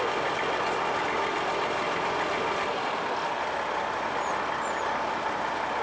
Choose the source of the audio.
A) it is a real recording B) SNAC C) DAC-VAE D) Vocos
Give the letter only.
A